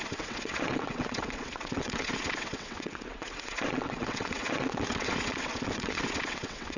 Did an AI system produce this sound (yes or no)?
yes